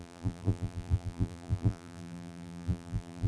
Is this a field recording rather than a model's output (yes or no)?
no